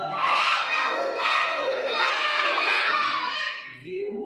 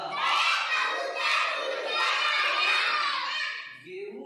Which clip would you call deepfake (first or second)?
first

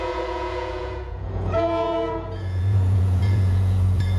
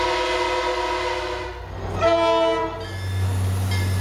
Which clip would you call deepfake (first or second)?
first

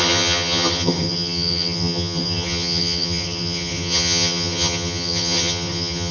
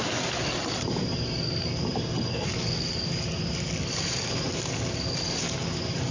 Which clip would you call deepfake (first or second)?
first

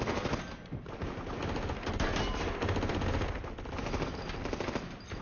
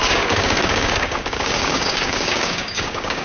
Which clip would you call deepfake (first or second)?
second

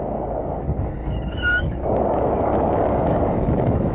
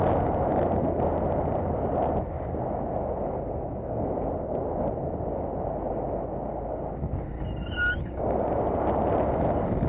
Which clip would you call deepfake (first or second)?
first